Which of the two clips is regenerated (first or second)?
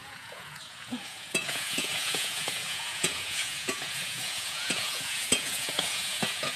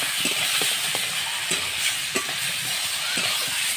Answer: first